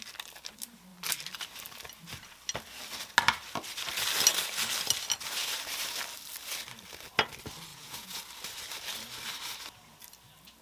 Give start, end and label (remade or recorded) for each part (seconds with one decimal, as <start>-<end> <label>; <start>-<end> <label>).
0.0-7.7 recorded; 7.7-8.2 remade; 8.2-10.6 recorded